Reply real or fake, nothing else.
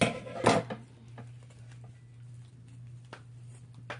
real